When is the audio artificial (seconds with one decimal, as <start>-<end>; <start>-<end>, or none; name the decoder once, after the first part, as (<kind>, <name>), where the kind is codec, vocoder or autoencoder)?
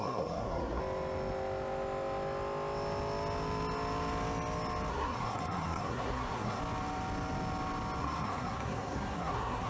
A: 0.0-0.8 (codec, SNAC); 4.9-6.6; 8.0-9.7